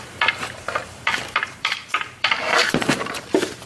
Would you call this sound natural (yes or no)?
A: no